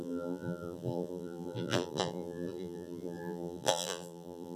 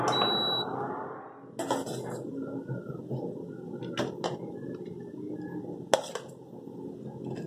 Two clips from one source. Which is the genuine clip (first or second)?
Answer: second